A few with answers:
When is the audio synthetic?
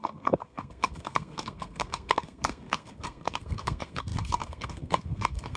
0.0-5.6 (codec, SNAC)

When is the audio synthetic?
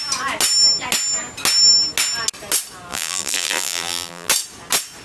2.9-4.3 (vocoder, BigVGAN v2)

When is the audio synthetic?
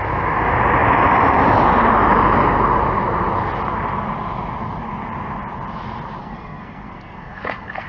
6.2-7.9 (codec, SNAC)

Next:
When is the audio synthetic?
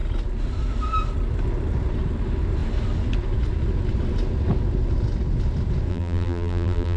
5.9-7.0 (vocoder, BigVGAN v2)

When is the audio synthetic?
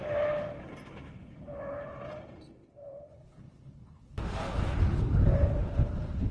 3.1-4.2 (codec, HILCodec)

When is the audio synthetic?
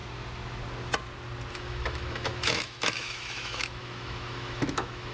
1.5-5.1 (autoencoder, DAC-VAE)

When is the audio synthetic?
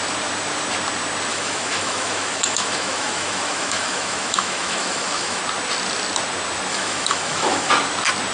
1.3-5.4 (autoencoder, DAC-VAE); 6.7-7.7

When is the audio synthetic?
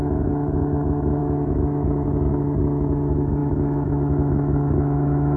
0.0-5.4 (autoencoder, DAC-VAE)